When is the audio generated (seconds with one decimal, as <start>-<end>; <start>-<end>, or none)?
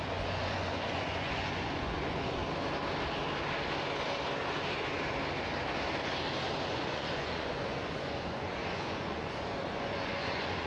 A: 0.0-2.4; 6.7-10.7